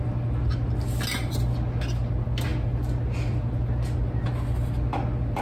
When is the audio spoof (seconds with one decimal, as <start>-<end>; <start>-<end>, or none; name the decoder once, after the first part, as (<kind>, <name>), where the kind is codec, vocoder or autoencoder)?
none